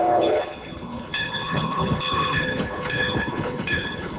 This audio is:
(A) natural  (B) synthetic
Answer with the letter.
B